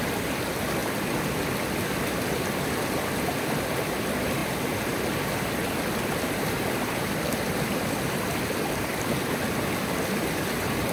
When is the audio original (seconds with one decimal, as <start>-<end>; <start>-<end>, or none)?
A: 0.8-2.1